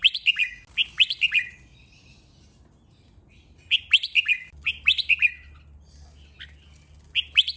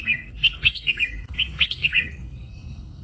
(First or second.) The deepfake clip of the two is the second